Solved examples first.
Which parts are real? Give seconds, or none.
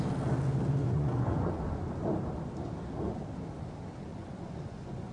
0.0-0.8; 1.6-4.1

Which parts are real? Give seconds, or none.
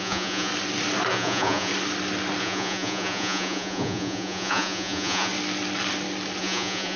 0.5-1.1; 1.7-2.4; 5.3-6.4